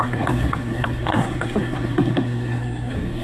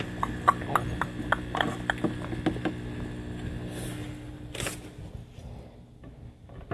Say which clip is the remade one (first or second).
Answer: first